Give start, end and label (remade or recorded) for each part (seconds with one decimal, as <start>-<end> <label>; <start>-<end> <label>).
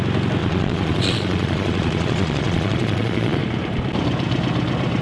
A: 0.0-0.4 recorded; 0.4-3.4 remade; 3.4-5.0 recorded